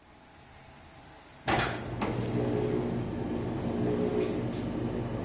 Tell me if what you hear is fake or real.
real